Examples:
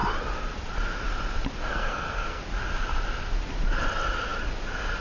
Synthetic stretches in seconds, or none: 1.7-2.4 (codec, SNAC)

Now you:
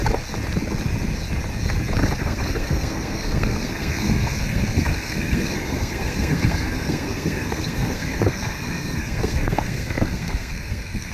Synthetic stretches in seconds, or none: 2.2-11.1 (codec, SNAC)